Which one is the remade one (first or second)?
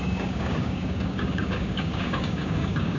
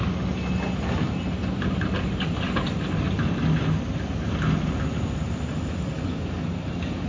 first